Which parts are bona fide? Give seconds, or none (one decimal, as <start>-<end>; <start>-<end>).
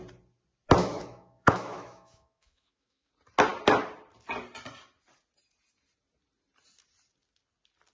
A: 0.0-0.8; 3.1-7.9